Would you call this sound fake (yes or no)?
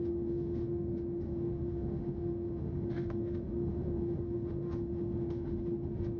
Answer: yes